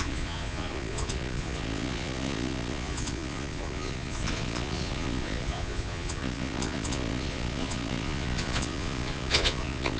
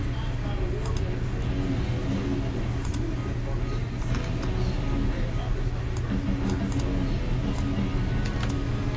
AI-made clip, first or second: first